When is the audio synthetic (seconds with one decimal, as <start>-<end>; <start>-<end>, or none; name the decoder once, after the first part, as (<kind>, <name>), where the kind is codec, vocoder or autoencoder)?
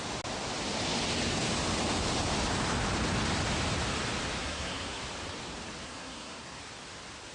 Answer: 4.4-5.0 (codec, SNAC); 5.8-6.6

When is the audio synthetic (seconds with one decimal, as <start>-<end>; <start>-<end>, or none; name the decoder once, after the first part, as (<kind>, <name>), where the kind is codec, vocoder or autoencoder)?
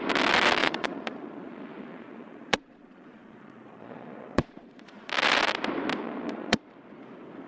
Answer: 0.6-5.1 (vocoder, Vocos); 6.0-6.6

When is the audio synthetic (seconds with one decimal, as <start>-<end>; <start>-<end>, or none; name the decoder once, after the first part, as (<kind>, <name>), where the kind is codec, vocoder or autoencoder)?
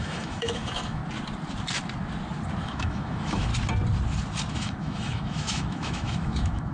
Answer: 0.0-1.0 (autoencoder, DAC-VAE); 2.6-3.5; 4.5-6.7